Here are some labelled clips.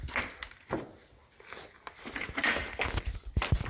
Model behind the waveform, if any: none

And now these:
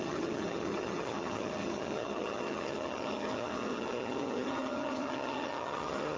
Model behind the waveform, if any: vocoder, HiFi-GAN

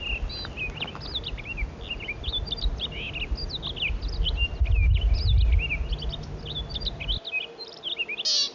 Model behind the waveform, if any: none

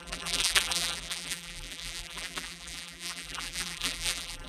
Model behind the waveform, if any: vocoder, BigVGAN v2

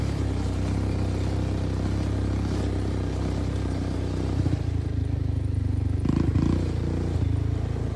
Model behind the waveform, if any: none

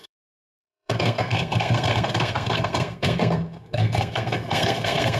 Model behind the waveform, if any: codec, SNAC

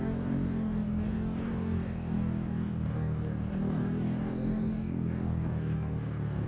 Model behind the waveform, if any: codec, DAC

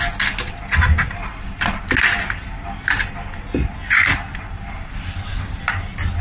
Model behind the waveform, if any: none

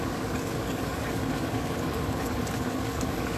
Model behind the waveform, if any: codec, DAC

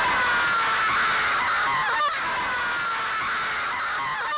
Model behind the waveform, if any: none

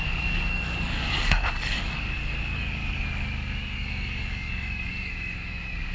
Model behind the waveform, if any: codec, DAC